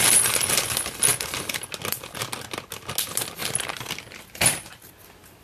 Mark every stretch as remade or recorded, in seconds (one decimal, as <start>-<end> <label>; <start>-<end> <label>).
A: 0.0-5.4 recorded

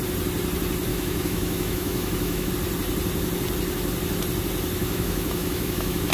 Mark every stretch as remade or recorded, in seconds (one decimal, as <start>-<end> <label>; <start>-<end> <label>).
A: 0.0-0.9 recorded; 0.9-2.5 remade; 2.5-4.8 recorded; 4.8-6.1 remade

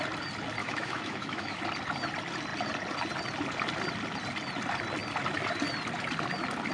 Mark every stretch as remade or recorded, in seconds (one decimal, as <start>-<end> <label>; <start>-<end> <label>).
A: 0.0-0.6 recorded; 0.6-1.6 remade; 1.6-6.7 recorded

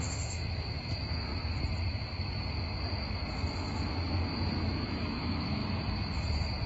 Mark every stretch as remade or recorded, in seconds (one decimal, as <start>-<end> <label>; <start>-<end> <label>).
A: 0.0-1.3 remade; 1.3-3.3 recorded; 3.3-5.6 remade; 5.6-6.7 recorded

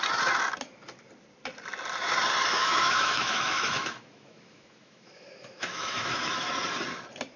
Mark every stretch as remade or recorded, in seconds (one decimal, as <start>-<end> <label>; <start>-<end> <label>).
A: 0.0-2.5 recorded; 2.5-6.5 remade; 6.5-7.4 recorded

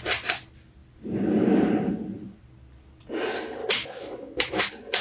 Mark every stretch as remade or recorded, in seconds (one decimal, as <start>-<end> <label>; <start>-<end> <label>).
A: 0.0-3.6 recorded; 3.6-4.6 remade; 4.6-5.0 recorded

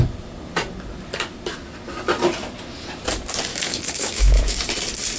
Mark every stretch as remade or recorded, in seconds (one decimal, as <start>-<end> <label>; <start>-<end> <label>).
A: 0.0-3.5 recorded; 3.5-4.6 remade; 4.6-5.2 recorded